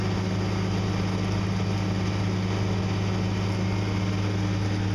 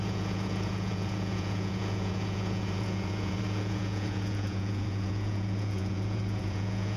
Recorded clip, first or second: first